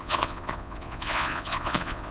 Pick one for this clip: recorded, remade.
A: remade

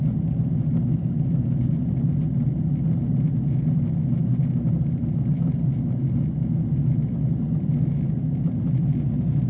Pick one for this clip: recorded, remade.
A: recorded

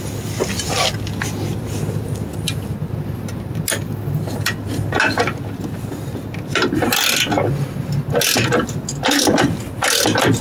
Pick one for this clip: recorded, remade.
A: recorded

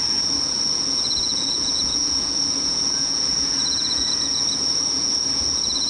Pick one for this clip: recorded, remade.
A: remade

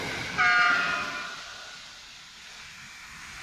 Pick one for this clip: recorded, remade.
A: recorded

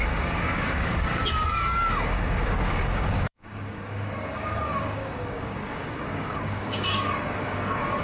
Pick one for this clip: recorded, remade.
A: remade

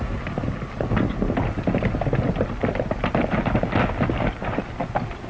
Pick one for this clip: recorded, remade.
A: recorded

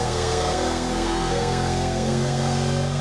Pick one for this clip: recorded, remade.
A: remade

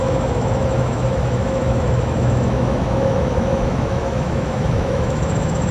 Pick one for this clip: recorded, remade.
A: remade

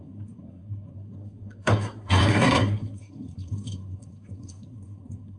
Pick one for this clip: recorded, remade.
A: remade